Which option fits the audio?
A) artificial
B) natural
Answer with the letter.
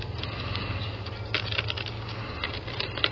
B